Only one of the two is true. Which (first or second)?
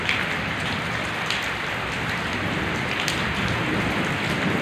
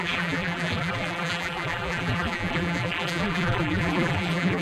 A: first